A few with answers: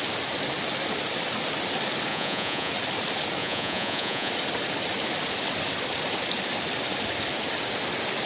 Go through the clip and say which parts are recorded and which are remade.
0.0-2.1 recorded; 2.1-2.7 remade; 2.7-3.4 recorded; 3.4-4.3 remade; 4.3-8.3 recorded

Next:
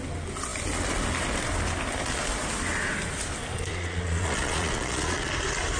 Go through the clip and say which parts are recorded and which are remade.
0.0-3.7 recorded; 3.7-5.3 remade; 5.3-5.8 recorded